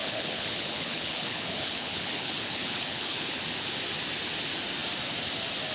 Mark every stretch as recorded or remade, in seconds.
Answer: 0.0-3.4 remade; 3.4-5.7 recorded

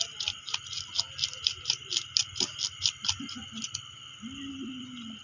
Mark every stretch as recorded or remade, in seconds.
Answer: 0.0-2.2 recorded; 2.2-4.5 remade; 4.5-5.2 recorded

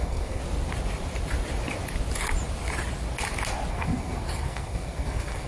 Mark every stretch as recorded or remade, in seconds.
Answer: 0.0-0.4 remade; 0.4-3.7 recorded; 3.7-5.5 remade

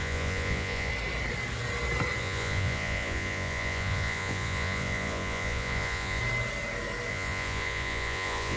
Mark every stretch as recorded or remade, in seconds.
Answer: 0.0-0.9 remade; 0.9-2.2 recorded; 2.2-6.2 remade; 6.2-7.1 recorded; 7.1-8.6 remade

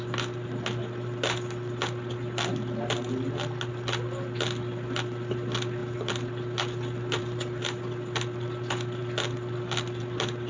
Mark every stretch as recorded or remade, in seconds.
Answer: 0.0-10.5 recorded

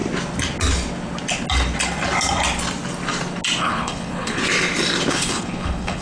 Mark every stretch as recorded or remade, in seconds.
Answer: 0.0-3.6 recorded; 3.6-4.4 remade; 4.4-5.1 recorded; 5.1-6.0 remade

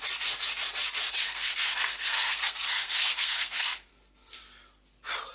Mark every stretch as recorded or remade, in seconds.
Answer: 0.0-1.2 recorded; 1.2-4.4 remade; 4.4-5.3 recorded

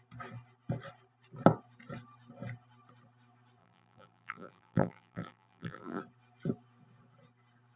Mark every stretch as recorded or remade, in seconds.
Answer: 0.0-3.6 recorded; 3.6-6.0 remade; 6.0-7.8 recorded